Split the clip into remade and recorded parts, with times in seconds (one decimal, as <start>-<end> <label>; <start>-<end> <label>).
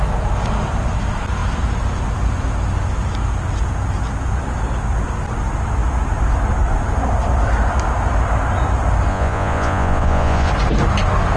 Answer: 0.0-9.1 recorded; 9.1-10.5 remade; 10.5-11.4 recorded